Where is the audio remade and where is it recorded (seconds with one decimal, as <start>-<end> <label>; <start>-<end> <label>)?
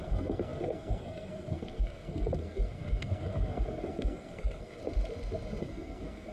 0.0-4.8 remade; 4.8-5.6 recorded; 5.6-6.3 remade